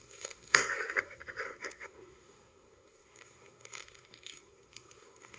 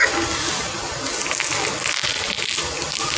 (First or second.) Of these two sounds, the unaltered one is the second